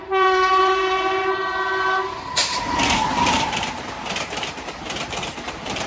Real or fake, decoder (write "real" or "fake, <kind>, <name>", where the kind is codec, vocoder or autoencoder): fake, vocoder, BigVGAN v2